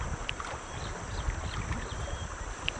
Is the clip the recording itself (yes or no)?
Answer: yes